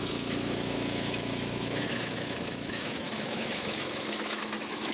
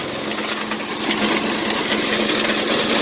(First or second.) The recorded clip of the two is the second